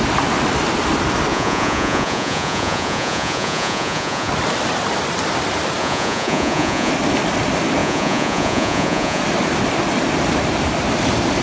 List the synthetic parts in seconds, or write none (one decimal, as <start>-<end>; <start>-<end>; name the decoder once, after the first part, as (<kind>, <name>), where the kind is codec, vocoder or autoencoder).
1.3-4.3 (vocoder, Vocos); 5.8-6.9; 7.8-9.2